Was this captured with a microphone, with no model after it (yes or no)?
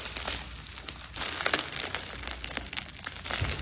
yes